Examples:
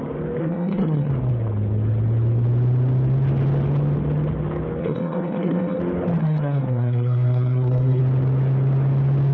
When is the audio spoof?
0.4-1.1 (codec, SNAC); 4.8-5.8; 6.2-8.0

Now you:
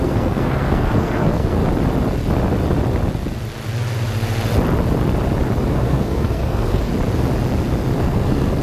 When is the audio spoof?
0.0-1.6 (codec, SNAC); 5.7-6.9; 8.0-8.6

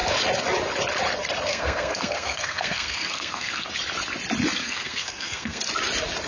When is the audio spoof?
1.5-3.7 (codec, SNAC); 4.6-5.6

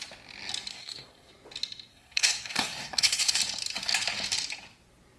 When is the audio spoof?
0.7-1.3 (codec, SNAC); 1.9-3.4

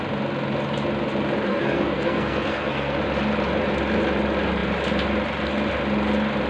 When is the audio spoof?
1.5-3.0 (codec, SNAC)

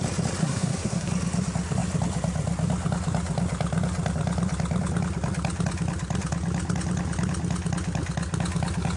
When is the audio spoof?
0.4-1.1 (codec, SNAC)